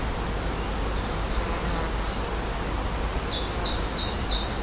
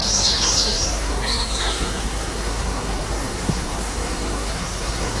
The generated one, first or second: second